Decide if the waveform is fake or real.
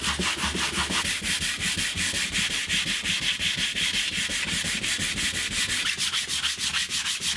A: real